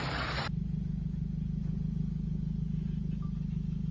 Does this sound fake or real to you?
real